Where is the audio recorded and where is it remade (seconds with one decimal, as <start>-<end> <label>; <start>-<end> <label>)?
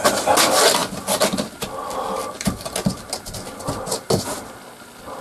0.0-5.2 recorded